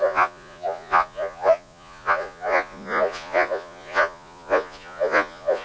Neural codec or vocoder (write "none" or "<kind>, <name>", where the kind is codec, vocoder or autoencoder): vocoder, Vocos